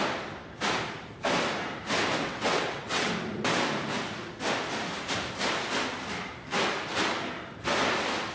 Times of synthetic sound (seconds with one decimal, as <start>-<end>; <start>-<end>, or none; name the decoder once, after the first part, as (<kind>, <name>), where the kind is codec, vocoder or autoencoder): 2.2-3.1 (vocoder, WaveNeXt)